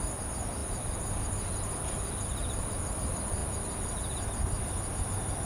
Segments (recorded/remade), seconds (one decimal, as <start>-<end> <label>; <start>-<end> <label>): 0.0-0.6 recorded; 0.6-2.9 remade; 2.9-5.5 recorded